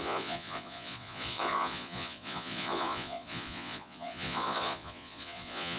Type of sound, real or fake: fake